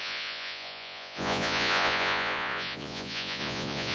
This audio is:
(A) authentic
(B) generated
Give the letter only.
B